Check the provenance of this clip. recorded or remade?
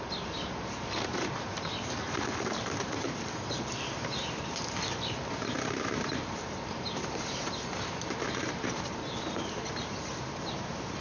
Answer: remade